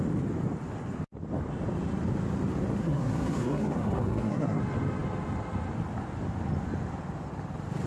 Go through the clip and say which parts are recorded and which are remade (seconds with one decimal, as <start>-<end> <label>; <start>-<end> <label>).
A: 0.0-2.8 recorded; 2.8-4.6 remade; 4.6-7.9 recorded